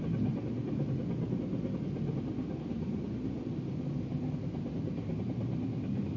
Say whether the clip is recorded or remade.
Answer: recorded